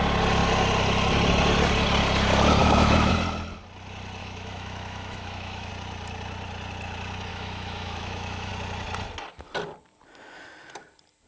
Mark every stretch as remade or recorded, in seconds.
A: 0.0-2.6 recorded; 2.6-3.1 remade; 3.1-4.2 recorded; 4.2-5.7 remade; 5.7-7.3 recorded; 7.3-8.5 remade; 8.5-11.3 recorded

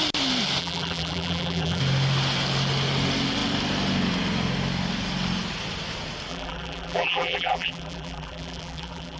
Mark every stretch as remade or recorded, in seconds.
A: 0.0-0.6 recorded; 0.6-1.8 remade; 1.8-6.3 recorded; 6.3-9.2 remade

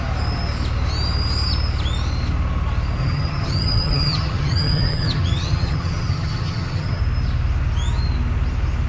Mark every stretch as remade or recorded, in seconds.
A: 0.0-3.0 recorded; 3.0-7.0 remade; 7.0-8.9 recorded

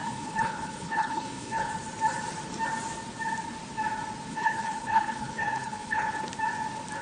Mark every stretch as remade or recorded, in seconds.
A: 0.0-1.7 remade; 1.7-4.3 recorded; 4.3-6.2 remade; 6.2-7.0 recorded

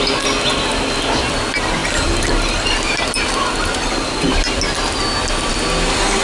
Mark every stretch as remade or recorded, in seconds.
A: 0.0-6.2 recorded

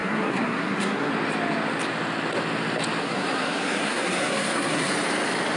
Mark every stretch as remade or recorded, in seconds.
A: 0.0-1.1 remade; 1.1-3.0 recorded; 3.0-4.9 remade; 4.9-5.6 recorded

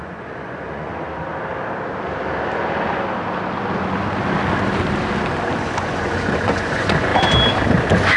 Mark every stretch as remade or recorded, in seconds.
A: 0.0-0.9 remade; 0.9-5.6 recorded; 5.6-7.1 remade; 7.1-8.2 recorded

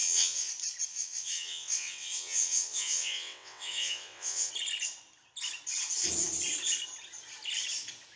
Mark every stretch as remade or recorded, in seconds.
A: 0.0-0.5 remade; 0.5-0.9 recorded; 0.9-4.5 remade; 4.5-8.2 recorded